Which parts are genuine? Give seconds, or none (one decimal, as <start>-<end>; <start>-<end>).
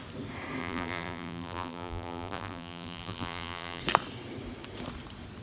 0.0-0.6; 3.8-5.4